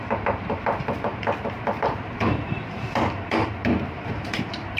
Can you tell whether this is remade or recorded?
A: remade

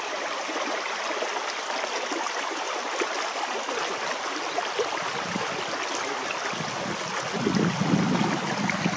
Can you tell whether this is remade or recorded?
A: recorded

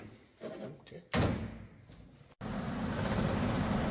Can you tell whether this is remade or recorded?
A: recorded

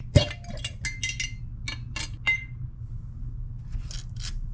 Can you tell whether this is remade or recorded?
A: recorded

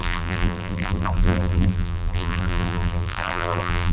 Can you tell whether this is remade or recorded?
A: remade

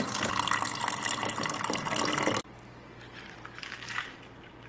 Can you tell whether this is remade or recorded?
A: recorded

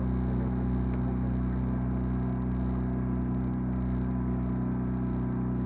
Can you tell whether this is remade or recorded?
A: recorded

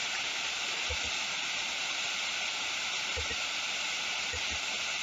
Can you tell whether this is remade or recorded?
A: recorded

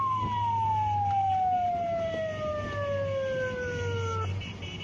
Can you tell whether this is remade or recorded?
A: recorded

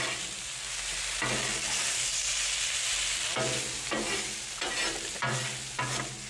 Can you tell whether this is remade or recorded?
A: recorded